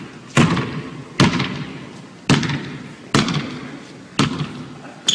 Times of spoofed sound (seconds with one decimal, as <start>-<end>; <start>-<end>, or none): none